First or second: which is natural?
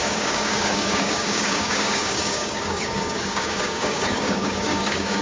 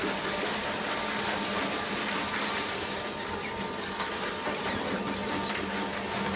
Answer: second